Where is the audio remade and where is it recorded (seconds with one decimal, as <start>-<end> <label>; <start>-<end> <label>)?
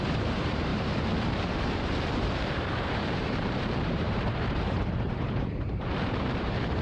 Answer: 0.0-6.8 remade